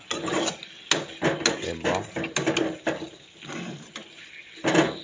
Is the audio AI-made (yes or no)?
no